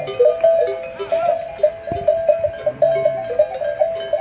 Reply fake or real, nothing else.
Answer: real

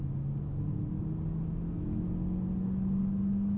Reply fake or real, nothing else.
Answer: real